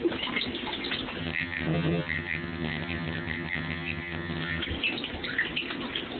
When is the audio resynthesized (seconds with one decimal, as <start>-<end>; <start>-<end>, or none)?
1.2-4.6